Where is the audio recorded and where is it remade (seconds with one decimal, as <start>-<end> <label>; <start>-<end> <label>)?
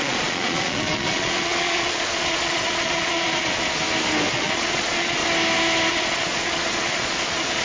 0.0-3.8 remade; 3.8-4.3 recorded; 4.3-5.2 remade; 5.2-5.9 recorded; 5.9-7.6 remade